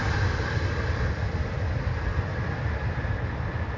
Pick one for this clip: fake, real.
real